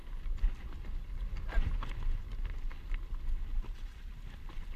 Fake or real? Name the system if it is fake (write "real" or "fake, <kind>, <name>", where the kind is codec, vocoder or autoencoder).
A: real